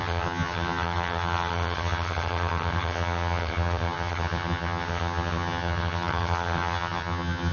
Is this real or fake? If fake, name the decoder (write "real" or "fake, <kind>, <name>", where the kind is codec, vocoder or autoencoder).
fake, vocoder, HiFi-GAN